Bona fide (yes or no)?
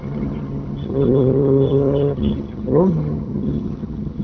no